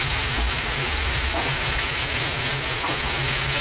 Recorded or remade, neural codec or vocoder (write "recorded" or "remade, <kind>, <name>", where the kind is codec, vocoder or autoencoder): recorded